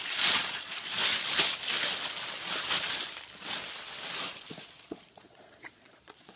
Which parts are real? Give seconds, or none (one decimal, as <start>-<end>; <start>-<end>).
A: 1.0-4.8